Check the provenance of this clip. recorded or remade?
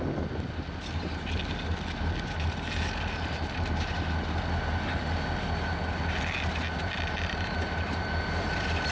recorded